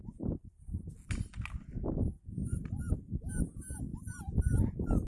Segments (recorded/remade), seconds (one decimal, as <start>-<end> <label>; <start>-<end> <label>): 0.0-0.9 remade; 0.9-2.4 recorded; 2.4-3.3 remade; 3.3-3.9 recorded; 3.9-5.1 remade